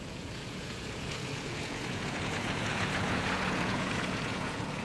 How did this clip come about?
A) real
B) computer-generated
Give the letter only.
B